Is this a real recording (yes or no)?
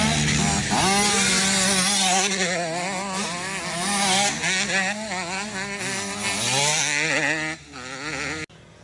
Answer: yes